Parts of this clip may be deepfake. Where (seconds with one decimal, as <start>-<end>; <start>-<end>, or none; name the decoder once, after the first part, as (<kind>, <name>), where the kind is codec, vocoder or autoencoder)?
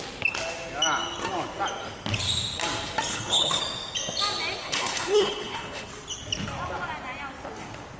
3.1-3.6 (codec, HILCodec); 4.6-5.9